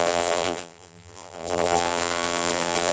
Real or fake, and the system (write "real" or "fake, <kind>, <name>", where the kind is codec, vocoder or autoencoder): fake, vocoder, BigVGAN v2